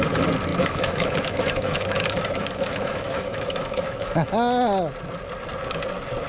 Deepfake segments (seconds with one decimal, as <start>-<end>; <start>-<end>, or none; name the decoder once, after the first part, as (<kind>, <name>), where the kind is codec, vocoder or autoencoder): 0.5-4.3 (autoencoder, DAC-VAE)